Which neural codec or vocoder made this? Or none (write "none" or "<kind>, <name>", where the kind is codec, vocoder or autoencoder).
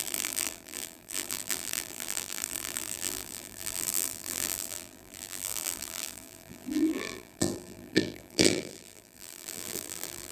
vocoder, BigVGAN v2